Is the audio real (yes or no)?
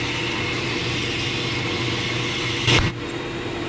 yes